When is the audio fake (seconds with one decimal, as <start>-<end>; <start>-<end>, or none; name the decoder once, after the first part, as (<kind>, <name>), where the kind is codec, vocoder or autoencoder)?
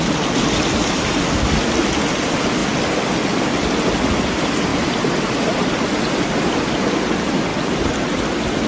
none